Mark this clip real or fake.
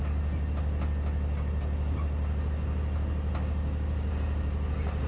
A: real